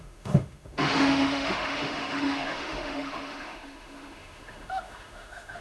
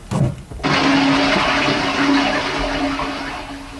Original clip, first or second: second